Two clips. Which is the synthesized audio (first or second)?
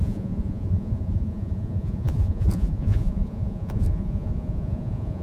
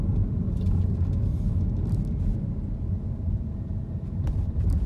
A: first